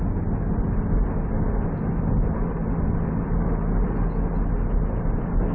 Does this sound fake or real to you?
real